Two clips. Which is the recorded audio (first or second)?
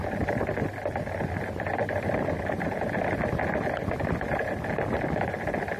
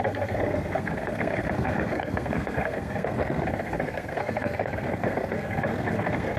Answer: first